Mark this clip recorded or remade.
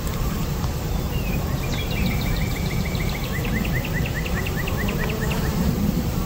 recorded